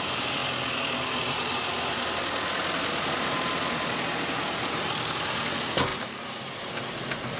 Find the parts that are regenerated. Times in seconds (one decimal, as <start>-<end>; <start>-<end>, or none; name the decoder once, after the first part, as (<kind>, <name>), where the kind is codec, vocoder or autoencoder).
none